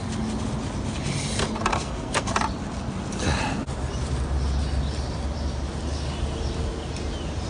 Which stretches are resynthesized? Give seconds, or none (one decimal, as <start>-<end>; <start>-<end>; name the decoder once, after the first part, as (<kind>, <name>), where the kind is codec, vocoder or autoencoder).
1.7-2.3 (codec, SNAC)